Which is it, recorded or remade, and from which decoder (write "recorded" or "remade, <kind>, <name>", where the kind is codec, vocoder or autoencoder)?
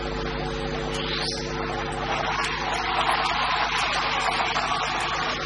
recorded